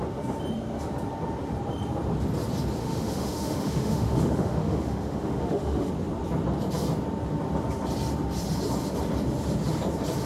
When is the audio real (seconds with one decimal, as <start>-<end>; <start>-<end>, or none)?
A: 0.0-2.8; 5.9-10.3